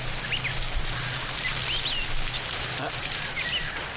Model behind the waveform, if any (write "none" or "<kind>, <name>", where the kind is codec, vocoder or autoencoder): none